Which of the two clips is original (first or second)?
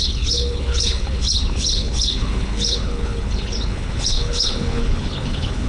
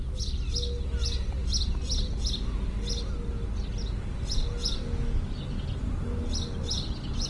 second